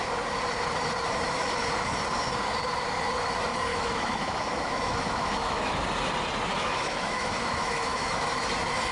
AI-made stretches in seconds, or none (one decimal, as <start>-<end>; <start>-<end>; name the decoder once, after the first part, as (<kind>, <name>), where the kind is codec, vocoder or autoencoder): 3.7-5.8 (autoencoder, DAC-VAE); 6.5-8.4